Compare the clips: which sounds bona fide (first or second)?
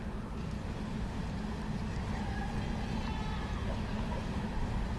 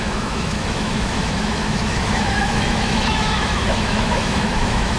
first